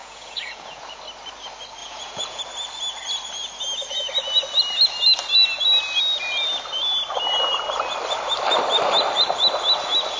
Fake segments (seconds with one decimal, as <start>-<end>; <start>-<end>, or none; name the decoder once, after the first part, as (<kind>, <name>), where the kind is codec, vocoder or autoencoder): 0.0-1.0 (vocoder, Vocos); 1.8-2.4